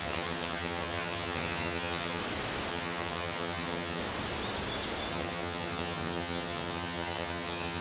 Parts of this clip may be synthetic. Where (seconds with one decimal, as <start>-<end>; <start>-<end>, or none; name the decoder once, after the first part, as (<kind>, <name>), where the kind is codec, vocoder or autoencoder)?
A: 0.0-2.2 (vocoder, HiFi-GAN); 2.7-4.0; 5.1-7.8